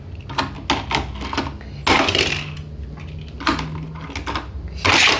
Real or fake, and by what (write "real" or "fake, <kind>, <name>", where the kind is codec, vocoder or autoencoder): real